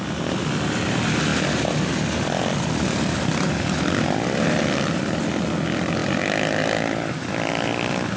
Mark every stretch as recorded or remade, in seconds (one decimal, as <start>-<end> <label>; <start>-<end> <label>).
0.0-8.2 recorded